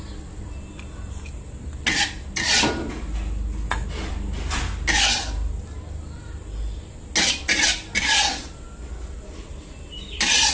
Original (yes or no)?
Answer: yes